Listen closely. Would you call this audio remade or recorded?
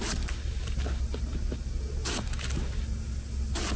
recorded